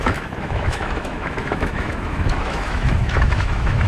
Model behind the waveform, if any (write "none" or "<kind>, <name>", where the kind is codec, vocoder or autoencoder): autoencoder, DAC-VAE